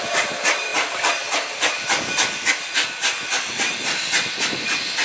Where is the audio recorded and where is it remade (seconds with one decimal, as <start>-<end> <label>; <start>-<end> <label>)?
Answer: 0.0-5.0 recorded